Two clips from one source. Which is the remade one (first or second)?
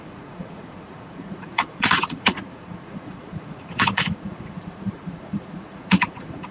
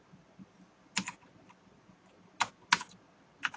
first